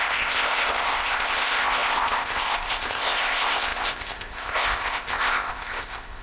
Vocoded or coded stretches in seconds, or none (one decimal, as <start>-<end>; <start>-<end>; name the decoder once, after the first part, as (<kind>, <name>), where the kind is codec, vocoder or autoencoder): 0.0-6.2 (codec, ZipCodec)